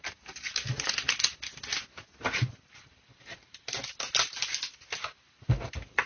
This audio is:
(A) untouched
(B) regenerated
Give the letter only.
A